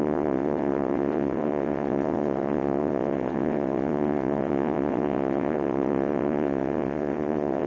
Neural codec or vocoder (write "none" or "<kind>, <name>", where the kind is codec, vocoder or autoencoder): vocoder, WaveNeXt